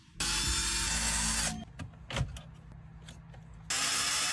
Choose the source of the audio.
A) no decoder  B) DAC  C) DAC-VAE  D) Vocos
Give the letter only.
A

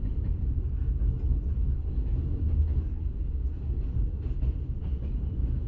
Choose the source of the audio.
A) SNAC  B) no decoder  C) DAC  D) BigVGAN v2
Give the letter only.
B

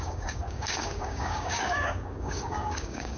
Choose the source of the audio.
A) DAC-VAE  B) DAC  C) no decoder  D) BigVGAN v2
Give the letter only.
B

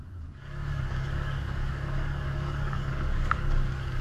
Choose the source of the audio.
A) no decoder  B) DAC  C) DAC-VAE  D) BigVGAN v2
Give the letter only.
B